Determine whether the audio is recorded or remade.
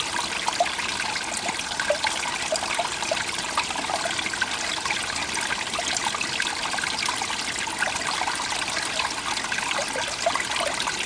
recorded